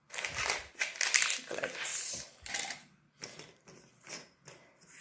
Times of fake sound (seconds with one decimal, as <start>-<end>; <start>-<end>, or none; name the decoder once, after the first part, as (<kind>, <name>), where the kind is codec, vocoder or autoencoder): none